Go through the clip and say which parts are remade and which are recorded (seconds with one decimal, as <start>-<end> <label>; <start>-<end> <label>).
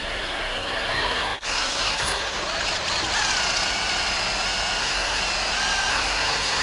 0.0-2.4 remade; 2.4-4.8 recorded; 4.8-5.2 remade; 5.2-5.9 recorded; 5.9-6.6 remade